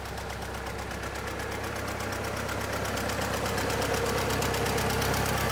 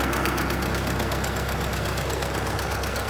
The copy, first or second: second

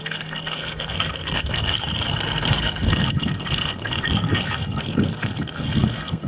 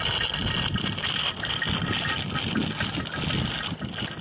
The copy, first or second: first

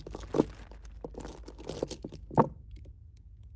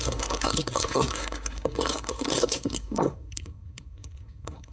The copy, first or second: second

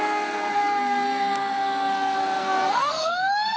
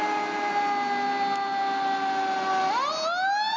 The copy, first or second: first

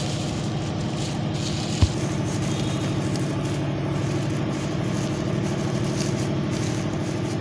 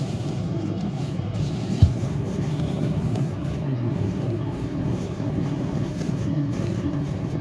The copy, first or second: second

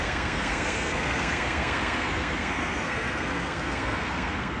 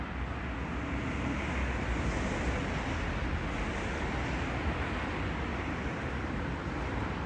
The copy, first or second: first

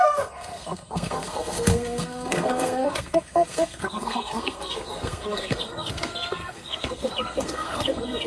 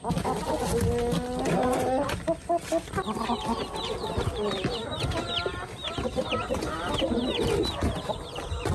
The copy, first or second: first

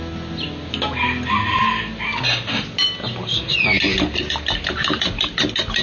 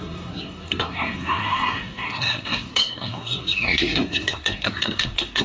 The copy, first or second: second